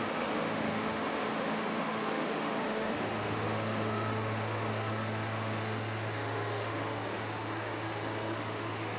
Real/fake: fake